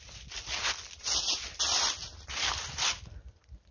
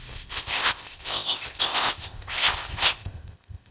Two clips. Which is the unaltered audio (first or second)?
first